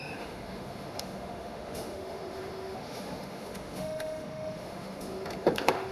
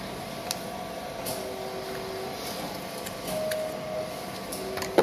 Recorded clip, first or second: second